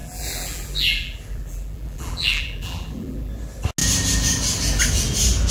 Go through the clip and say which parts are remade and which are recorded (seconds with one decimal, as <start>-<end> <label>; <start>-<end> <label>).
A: 0.0-3.3 remade; 3.3-5.5 recorded